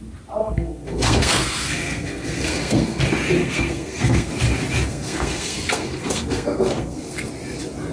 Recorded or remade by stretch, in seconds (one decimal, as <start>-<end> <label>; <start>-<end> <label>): 0.0-0.4 recorded; 0.4-3.0 remade; 3.0-3.4 recorded; 3.4-4.3 remade; 4.3-4.9 recorded; 4.9-7.3 remade; 7.3-7.9 recorded